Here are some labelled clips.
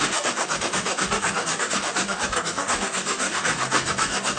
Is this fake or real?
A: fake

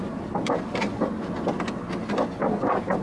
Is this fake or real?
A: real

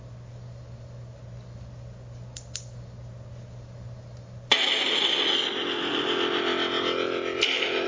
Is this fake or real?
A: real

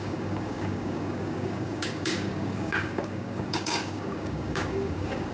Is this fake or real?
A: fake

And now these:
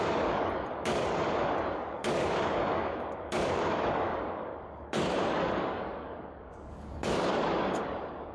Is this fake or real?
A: fake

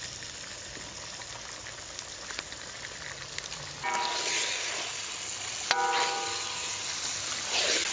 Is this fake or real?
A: real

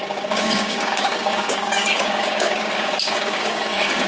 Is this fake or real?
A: fake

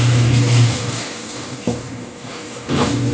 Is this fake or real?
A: fake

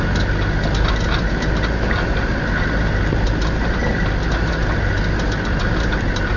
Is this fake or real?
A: real